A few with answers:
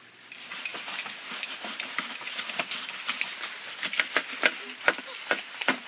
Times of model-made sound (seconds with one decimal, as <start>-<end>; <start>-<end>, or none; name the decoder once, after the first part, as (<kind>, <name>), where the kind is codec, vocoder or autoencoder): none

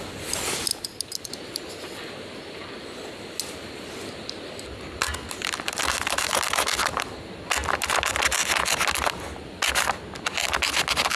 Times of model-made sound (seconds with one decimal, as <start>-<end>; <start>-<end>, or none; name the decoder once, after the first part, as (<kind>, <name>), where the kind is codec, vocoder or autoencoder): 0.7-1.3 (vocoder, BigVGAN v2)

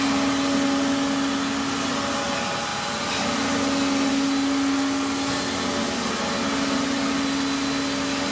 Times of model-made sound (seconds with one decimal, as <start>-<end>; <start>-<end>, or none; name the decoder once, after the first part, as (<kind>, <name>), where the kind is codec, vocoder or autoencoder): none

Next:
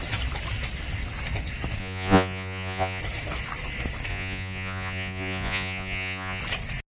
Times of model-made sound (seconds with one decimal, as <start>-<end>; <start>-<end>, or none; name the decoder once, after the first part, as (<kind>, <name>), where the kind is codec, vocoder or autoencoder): 1.8-3.0 (vocoder, Vocos); 4.1-6.4